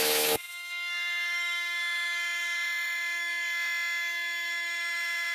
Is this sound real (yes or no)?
no